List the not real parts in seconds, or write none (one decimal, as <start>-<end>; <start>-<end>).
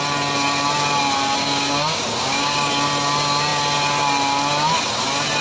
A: 1.4-2.7